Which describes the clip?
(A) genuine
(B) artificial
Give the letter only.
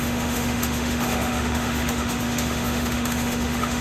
B